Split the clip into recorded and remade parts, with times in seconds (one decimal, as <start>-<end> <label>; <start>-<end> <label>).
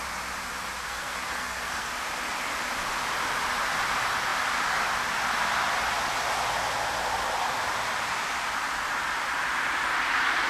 0.0-0.8 recorded; 0.8-1.9 remade; 1.9-10.5 recorded